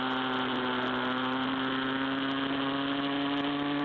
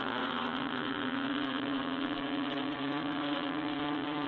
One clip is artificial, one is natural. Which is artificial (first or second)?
second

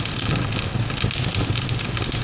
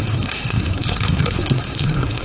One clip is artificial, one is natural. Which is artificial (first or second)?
second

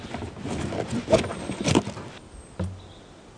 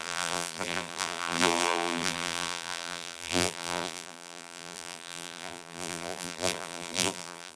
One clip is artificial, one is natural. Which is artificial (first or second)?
second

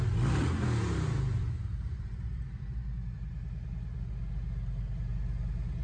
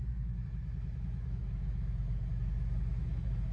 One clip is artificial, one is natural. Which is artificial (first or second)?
second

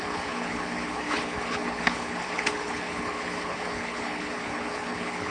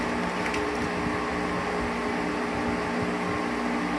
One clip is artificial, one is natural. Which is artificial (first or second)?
first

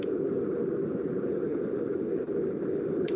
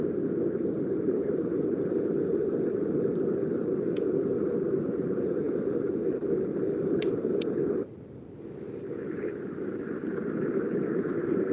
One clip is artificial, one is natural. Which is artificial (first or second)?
second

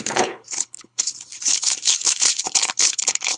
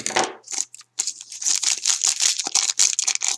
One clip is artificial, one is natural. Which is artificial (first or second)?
first